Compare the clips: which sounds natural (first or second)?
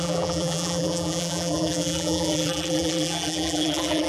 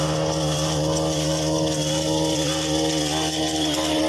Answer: second